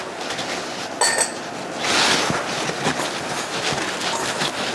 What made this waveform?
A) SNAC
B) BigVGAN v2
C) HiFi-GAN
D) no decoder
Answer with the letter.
D